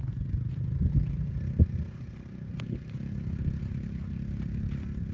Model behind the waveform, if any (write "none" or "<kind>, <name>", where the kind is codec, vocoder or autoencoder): vocoder, BigVGAN v2